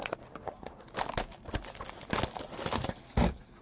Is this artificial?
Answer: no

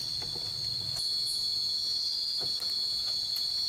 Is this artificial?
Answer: no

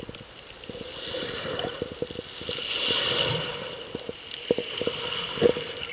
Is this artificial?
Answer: no